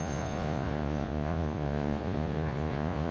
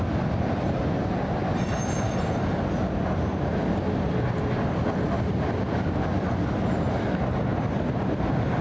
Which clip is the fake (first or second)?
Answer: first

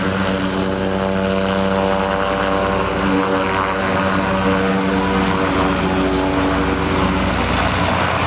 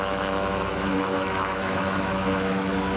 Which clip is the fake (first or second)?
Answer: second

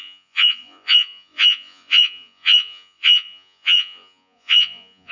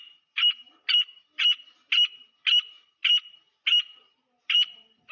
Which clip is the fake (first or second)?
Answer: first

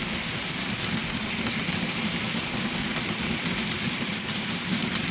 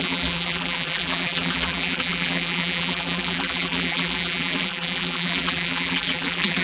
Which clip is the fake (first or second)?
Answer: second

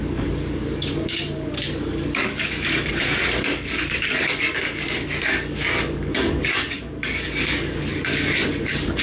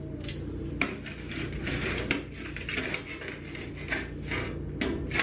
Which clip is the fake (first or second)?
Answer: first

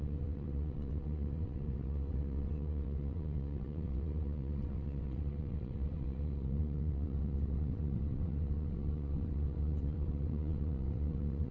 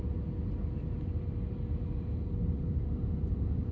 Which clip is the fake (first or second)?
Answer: first